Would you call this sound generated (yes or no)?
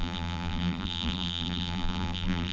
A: yes